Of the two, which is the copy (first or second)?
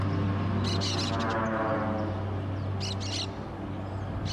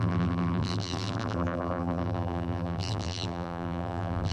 second